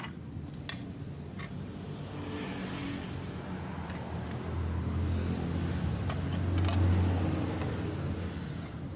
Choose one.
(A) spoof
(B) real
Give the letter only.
B